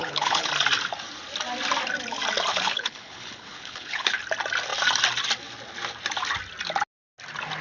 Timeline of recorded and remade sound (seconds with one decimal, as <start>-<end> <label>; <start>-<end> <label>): 0.0-0.5 remade; 0.5-2.5 recorded; 2.5-4.2 remade; 4.2-7.6 recorded